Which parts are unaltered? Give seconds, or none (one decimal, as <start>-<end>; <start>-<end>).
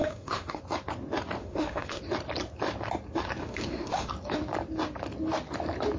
0.6-1.4; 2.0-3.4; 4.1-6.0